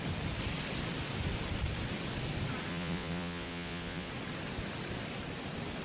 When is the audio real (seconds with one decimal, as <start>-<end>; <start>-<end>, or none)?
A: 0.0-2.7; 4.1-5.8